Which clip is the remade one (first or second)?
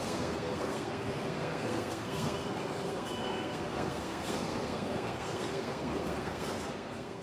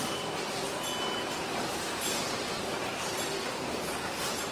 first